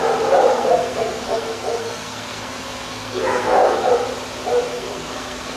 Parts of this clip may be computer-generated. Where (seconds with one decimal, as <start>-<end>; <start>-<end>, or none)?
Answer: 0.5-3.9; 4.7-5.6